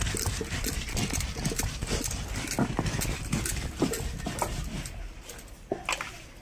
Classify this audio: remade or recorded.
recorded